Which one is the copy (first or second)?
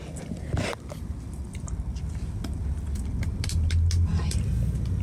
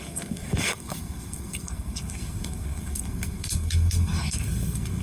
second